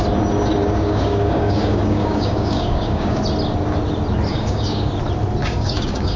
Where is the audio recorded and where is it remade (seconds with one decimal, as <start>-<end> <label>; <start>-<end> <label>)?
0.0-0.6 recorded; 0.6-3.2 remade; 3.2-4.3 recorded; 4.3-4.9 remade; 4.9-5.4 recorded; 5.4-6.2 remade